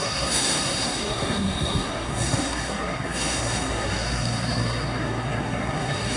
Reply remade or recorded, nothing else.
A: remade